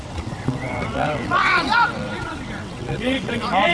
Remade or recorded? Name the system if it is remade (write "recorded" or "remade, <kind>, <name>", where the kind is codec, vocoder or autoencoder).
remade, vocoder, WaveNeXt